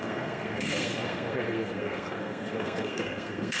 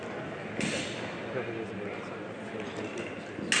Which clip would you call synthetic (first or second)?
first